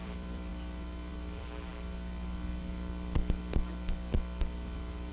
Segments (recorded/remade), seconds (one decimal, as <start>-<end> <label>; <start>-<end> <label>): 0.0-0.5 remade; 0.5-1.1 recorded; 1.1-1.7 remade; 1.7-5.1 recorded